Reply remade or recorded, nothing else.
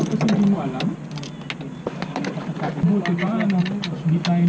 recorded